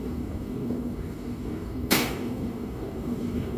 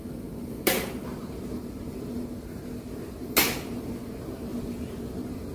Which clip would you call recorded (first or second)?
second